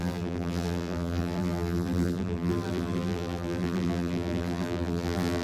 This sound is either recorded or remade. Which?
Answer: remade